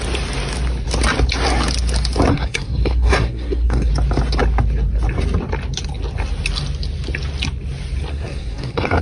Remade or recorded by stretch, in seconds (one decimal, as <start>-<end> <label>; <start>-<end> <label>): 0.0-2.3 recorded; 2.3-3.9 remade; 3.9-8.1 recorded; 8.1-9.0 remade